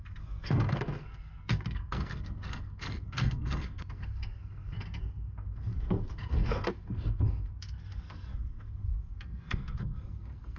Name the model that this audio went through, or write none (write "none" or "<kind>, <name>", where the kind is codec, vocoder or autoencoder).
codec, SNAC